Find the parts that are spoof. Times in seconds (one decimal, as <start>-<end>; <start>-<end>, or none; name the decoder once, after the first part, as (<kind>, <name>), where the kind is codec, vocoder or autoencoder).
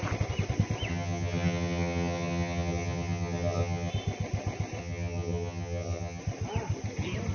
0.9-3.9 (vocoder, HiFi-GAN); 4.8-6.2